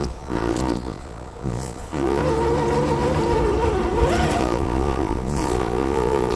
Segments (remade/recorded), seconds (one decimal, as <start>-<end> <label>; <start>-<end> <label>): 0.0-2.2 remade; 2.2-4.4 recorded; 4.4-6.4 remade